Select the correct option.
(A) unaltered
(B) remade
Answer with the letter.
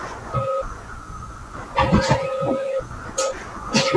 B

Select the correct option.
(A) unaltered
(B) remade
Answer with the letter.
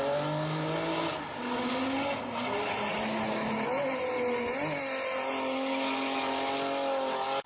A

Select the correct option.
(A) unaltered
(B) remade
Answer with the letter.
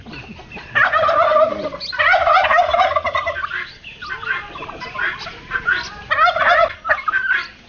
A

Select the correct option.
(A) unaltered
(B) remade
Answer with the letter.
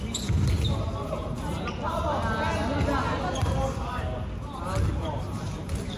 A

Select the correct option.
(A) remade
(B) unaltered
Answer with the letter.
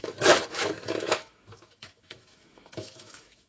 A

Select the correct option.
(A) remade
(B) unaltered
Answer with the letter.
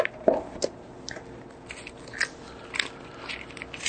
B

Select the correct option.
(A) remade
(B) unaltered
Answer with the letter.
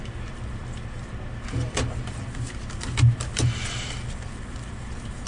A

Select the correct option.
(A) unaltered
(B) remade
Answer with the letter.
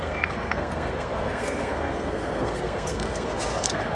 B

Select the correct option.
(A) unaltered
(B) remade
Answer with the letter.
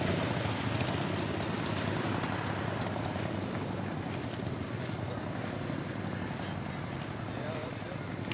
A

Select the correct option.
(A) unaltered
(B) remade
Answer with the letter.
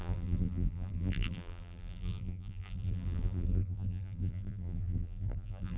B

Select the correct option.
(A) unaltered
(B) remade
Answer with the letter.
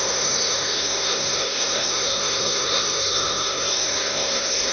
B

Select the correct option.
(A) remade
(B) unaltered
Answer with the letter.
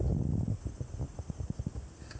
B